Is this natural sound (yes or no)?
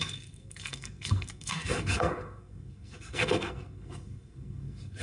no